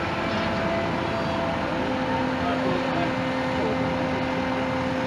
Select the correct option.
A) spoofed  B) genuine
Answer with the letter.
B